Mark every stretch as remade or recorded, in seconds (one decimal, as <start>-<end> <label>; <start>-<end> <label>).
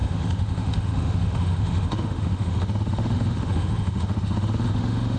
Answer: 0.0-5.2 remade